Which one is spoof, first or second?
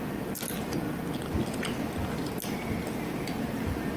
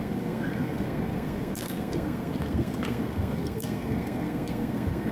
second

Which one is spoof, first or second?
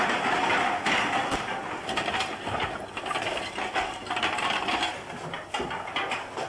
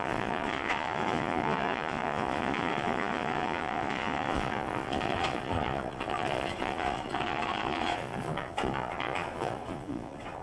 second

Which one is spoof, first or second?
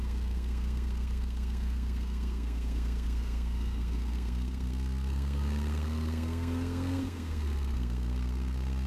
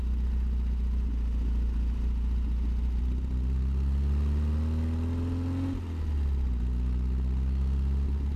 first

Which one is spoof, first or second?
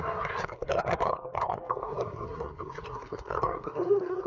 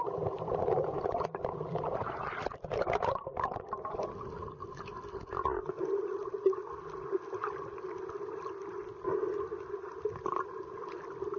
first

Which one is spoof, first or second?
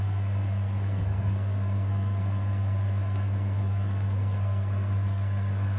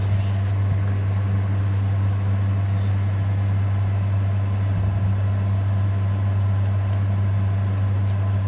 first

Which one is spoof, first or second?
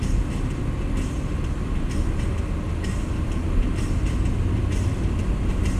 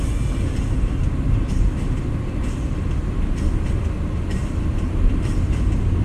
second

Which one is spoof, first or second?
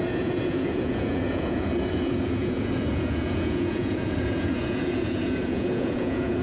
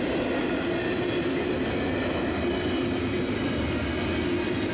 first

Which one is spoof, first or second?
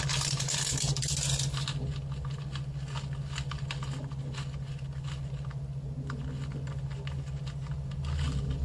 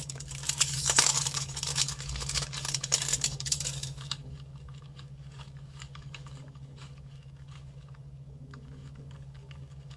second